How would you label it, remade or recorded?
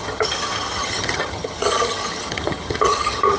remade